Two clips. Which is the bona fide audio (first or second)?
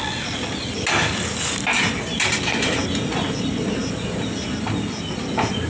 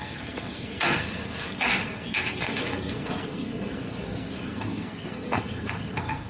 first